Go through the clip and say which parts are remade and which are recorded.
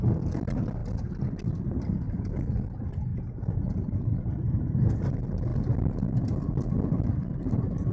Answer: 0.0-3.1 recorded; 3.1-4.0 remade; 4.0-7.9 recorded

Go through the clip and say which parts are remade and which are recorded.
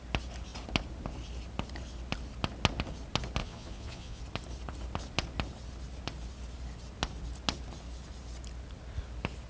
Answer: 0.0-3.4 recorded; 3.4-4.2 remade; 4.2-9.5 recorded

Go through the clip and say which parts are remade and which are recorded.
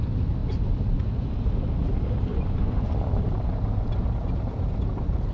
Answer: 0.0-2.3 recorded; 2.3-2.9 remade; 2.9-5.3 recorded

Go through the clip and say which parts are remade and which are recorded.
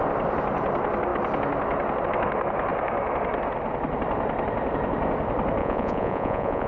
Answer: 0.0-5.6 recorded; 5.6-6.7 remade